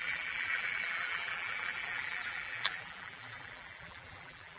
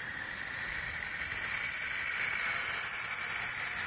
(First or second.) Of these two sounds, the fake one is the first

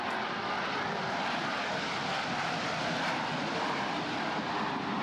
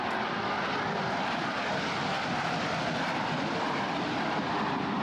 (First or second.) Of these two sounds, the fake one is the second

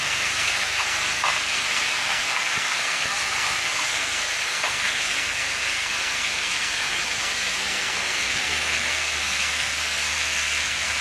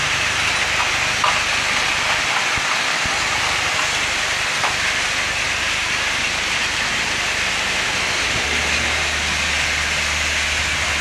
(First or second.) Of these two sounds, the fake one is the first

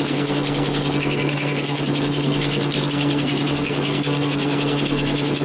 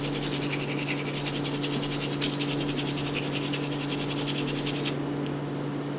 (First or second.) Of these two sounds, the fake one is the first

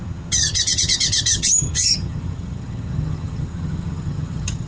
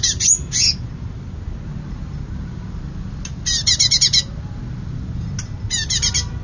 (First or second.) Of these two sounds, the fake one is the first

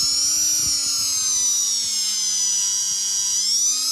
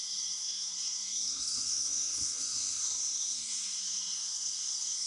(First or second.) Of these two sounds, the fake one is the second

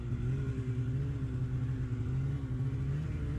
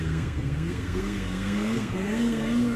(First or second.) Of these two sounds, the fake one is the second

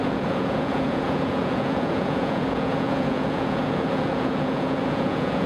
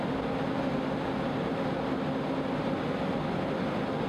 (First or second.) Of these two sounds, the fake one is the first